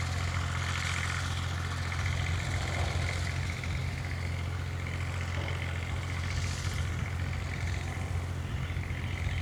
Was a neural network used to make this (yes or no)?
no